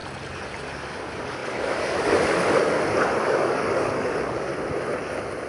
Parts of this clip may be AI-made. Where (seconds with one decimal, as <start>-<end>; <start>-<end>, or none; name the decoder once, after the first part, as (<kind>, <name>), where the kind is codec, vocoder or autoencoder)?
0.7-4.5 (codec, DAC)